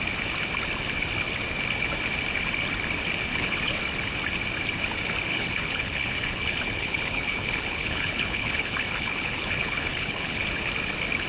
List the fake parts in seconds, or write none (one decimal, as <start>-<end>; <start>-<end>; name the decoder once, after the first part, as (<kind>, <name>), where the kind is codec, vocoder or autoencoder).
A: 3.3-3.8 (codec, HILCodec); 5.3-10.4